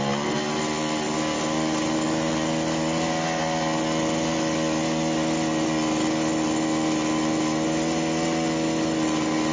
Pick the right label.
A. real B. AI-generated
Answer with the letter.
A